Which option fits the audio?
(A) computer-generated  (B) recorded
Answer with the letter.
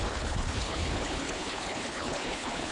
A